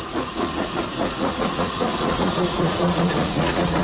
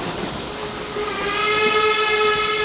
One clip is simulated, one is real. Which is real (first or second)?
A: second